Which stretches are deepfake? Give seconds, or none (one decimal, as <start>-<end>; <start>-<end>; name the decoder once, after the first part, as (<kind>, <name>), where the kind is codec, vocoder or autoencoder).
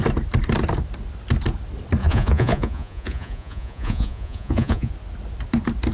2.0-4.9 (vocoder, Vocos)